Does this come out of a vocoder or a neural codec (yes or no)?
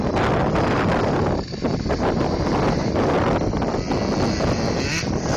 no